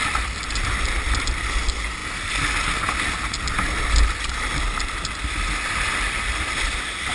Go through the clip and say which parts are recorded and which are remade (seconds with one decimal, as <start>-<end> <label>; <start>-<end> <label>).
0.0-7.1 recorded